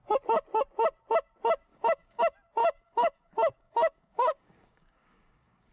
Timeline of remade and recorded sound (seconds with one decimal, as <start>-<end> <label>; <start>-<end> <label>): 0.0-1.7 recorded; 1.7-2.2 remade; 2.2-2.6 recorded; 2.6-5.7 remade